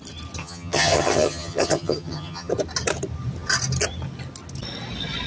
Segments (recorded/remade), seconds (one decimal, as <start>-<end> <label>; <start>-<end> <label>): 0.0-0.4 recorded; 0.4-2.5 remade; 2.5-5.3 recorded